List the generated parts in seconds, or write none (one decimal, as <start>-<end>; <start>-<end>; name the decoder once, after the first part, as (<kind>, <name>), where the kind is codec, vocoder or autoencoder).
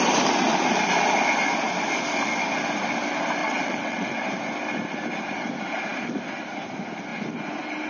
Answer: 3.4-4.3 (vocoder, WaveNeXt)